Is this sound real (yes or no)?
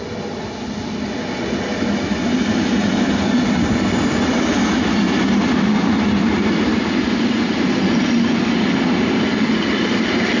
yes